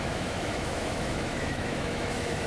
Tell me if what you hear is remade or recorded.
remade